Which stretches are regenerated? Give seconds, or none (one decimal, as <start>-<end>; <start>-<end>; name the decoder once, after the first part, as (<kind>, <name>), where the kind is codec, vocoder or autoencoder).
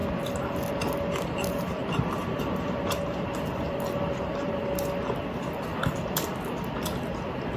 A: 1.8-4.6 (vocoder, BigVGAN v2); 5.7-6.4